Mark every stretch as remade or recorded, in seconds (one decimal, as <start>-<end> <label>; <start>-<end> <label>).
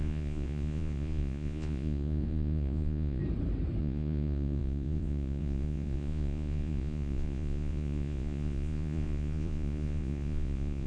0.0-3.2 remade; 3.2-3.8 recorded; 3.8-10.9 remade